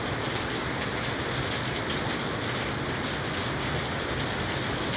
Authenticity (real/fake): real